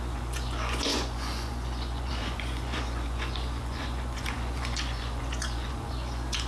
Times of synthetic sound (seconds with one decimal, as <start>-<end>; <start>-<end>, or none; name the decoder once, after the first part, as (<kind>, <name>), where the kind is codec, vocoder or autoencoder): 0.0-6.5 (vocoder, Vocos)